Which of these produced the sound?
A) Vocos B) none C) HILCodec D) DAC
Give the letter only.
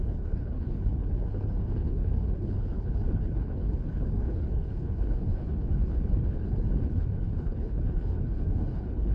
C